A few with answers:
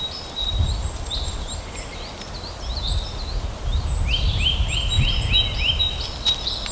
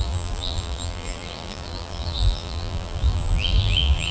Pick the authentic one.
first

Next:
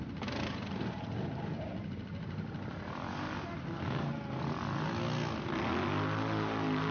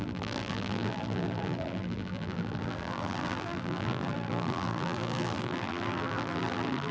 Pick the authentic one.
first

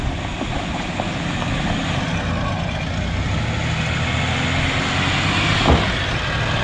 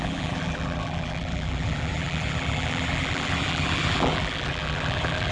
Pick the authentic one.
first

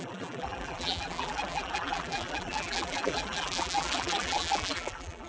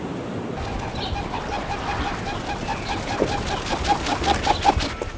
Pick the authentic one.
second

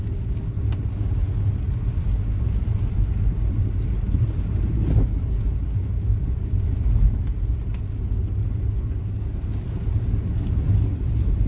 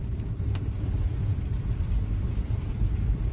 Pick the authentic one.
first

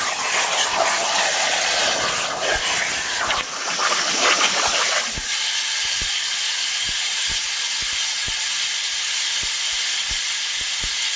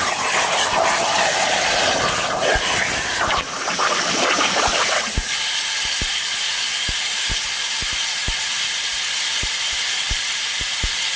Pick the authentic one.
first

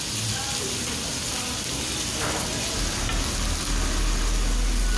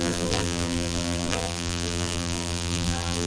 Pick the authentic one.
first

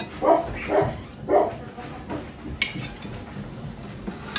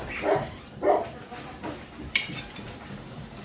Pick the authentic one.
first